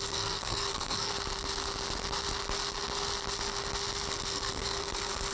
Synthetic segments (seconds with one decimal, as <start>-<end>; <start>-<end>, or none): 0.0-1.1; 4.1-5.3